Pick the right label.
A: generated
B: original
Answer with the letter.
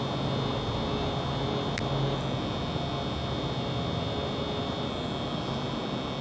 B